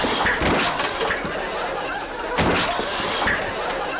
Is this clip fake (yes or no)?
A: no